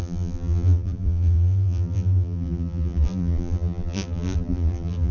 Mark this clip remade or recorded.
remade